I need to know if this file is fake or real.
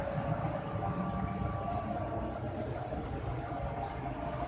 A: real